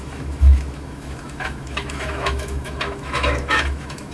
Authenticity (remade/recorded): remade